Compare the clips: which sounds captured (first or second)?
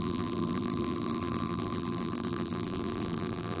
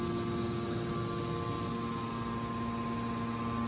second